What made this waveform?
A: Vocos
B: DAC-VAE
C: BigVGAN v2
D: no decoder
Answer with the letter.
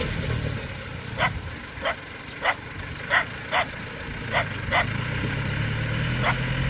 D